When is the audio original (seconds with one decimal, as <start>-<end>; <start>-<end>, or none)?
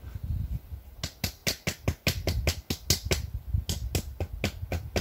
0.0-5.0